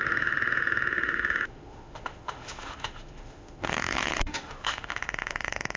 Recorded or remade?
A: remade